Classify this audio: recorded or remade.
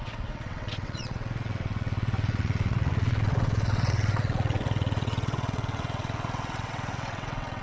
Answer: remade